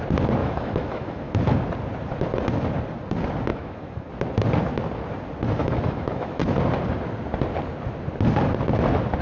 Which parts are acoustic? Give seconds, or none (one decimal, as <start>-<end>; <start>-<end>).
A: 0.0-0.4; 1.4-3.5; 4.1-5.6; 6.4-9.2